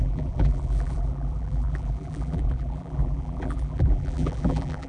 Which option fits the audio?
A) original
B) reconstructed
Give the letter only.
B